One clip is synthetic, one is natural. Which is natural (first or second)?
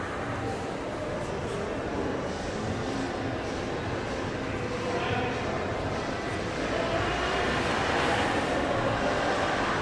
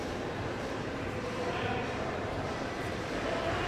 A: first